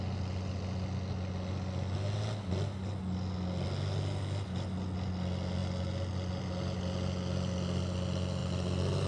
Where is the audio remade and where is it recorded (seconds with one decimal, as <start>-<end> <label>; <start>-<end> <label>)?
0.0-9.1 recorded